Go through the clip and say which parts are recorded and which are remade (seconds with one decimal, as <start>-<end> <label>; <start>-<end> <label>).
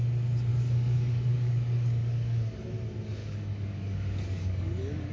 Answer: 0.0-0.5 recorded; 0.5-2.7 remade; 2.7-3.2 recorded; 3.2-5.1 remade